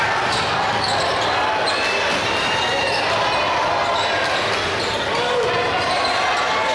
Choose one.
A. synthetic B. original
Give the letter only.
B